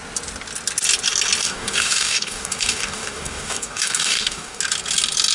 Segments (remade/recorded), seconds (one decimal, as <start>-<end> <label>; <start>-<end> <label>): 0.0-1.4 recorded; 1.4-4.6 remade; 4.6-5.3 recorded